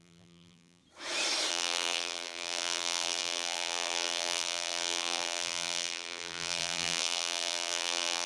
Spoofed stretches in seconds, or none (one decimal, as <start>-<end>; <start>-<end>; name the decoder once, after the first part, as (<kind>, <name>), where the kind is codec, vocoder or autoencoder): 0.0-0.8 (vocoder, BigVGAN v2); 1.5-8.3